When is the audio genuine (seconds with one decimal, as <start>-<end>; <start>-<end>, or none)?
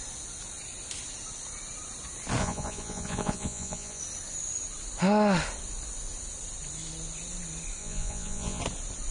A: 0.0-2.4; 4.0-7.8; 8.6-9.1